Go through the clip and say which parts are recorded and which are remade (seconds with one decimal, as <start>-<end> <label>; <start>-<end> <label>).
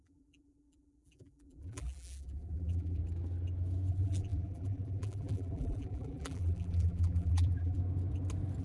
0.0-3.0 remade; 3.0-3.9 recorded; 3.9-7.8 remade; 7.8-8.6 recorded